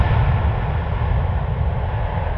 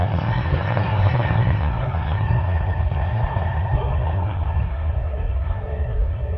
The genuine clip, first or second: first